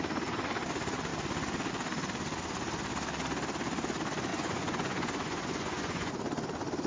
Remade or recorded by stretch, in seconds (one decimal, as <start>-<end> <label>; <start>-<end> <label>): 0.0-4.3 recorded; 4.3-6.1 remade; 6.1-6.9 recorded